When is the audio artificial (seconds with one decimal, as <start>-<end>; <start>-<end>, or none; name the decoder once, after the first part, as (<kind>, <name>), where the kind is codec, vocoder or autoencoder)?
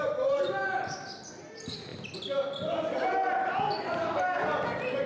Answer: none